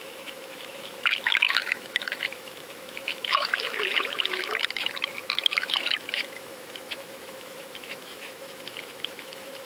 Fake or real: fake